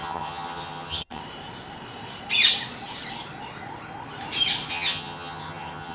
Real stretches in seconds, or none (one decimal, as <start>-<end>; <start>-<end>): 1.2-4.7